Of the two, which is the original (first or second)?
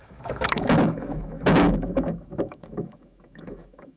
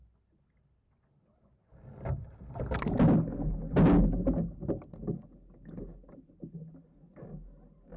second